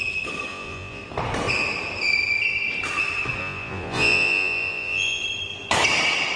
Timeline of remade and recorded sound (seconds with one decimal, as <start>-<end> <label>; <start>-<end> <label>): 0.0-0.5 recorded; 0.5-1.0 remade; 1.0-3.4 recorded; 3.4-5.2 remade; 5.2-6.4 recorded